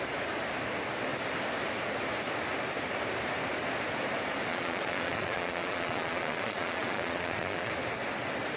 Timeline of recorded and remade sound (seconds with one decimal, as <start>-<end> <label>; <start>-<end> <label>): 0.0-4.5 recorded; 4.5-7.7 remade; 7.7-8.6 recorded